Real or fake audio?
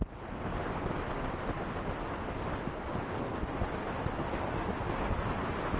real